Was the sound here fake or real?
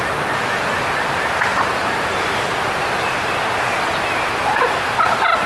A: real